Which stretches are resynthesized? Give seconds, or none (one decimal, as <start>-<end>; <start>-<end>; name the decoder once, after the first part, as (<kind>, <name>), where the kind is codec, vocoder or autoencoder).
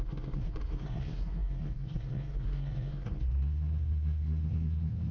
0.0-5.1 (codec, SNAC)